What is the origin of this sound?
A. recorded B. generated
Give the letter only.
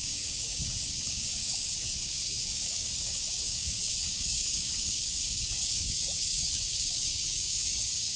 B